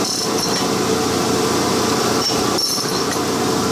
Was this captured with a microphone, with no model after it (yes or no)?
yes